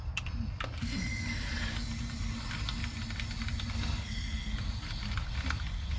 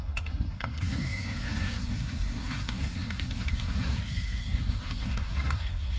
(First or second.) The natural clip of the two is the first